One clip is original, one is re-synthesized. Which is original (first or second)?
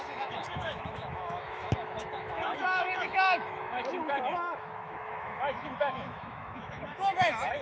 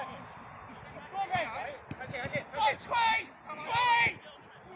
second